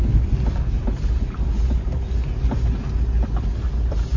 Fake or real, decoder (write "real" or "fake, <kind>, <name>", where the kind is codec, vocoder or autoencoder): real